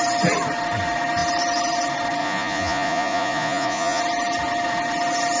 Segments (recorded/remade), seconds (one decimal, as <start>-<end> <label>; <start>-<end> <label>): 0.0-2.2 recorded; 2.2-4.0 remade; 4.0-5.4 recorded